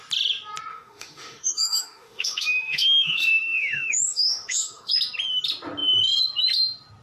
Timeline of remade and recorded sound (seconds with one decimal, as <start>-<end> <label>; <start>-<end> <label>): 0.0-0.7 recorded; 0.7-4.9 remade; 4.9-7.0 recorded